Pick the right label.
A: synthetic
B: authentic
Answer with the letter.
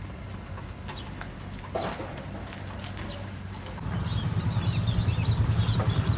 B